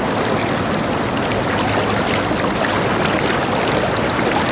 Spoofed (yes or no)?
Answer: no